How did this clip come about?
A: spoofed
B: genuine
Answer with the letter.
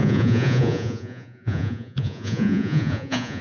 A